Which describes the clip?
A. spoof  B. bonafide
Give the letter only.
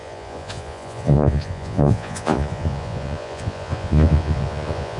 A